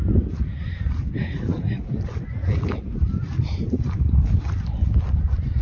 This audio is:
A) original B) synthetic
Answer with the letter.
A